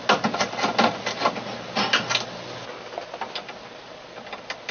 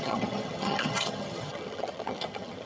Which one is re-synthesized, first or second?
second